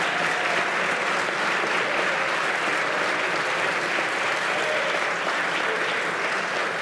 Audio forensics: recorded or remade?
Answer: recorded